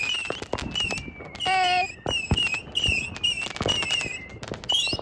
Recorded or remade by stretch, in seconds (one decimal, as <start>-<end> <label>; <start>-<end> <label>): 0.0-5.0 recorded